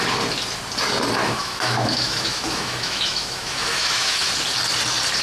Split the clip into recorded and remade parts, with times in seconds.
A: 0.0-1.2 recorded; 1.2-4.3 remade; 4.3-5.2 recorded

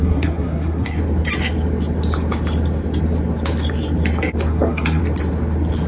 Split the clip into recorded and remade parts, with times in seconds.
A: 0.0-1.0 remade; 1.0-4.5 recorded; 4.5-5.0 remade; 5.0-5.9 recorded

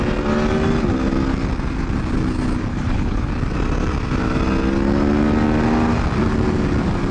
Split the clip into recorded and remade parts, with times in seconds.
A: 0.0-2.7 recorded; 2.7-3.3 remade; 3.3-7.1 recorded